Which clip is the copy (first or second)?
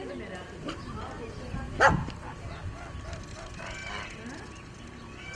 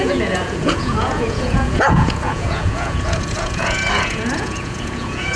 second